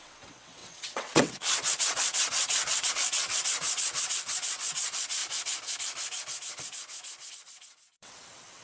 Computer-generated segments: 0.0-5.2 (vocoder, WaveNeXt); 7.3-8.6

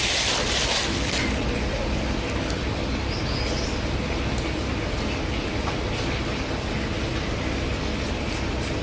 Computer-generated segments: none

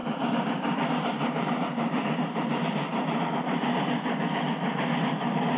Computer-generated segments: 0.0-3.4 (vocoder, BigVGAN v2)